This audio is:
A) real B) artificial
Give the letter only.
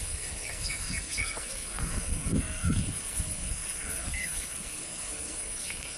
B